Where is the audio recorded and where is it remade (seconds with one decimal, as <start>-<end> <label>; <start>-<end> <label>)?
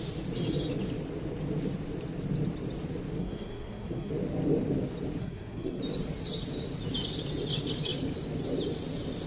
0.0-3.2 recorded; 3.2-4.1 remade; 4.1-5.2 recorded; 5.2-5.8 remade; 5.8-9.3 recorded